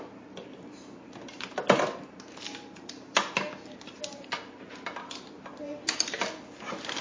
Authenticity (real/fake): real